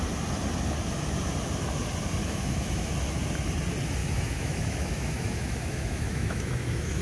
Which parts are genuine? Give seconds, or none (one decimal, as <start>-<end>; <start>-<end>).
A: 0.0-2.2; 2.9-4.0